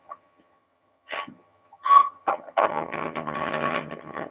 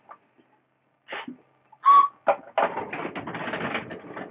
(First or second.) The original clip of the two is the second